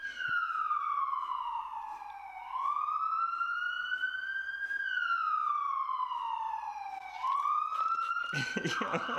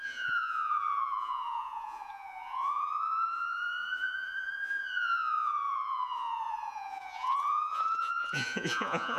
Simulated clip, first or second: second